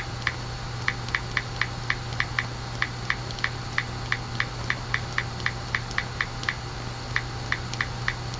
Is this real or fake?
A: real